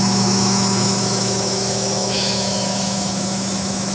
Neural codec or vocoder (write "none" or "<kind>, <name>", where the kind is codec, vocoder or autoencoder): autoencoder, DAC-VAE